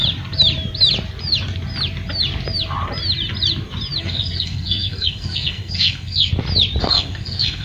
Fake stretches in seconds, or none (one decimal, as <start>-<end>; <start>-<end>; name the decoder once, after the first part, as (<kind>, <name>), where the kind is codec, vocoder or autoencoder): 4.0-6.3 (codec, SNAC); 6.8-7.6